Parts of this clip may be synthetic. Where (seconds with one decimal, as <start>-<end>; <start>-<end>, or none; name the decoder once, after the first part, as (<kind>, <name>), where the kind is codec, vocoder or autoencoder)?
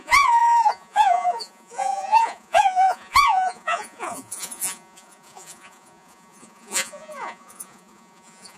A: 0.0-8.6 (vocoder, Vocos)